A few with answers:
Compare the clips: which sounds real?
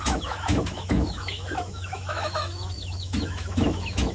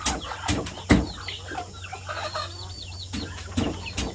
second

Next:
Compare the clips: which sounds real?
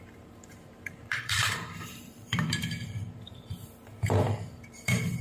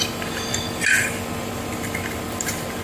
second